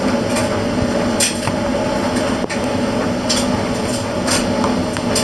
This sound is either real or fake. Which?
real